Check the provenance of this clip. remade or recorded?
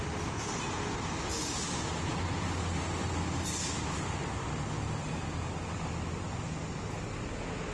recorded